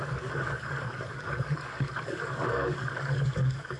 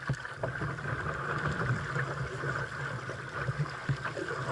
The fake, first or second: first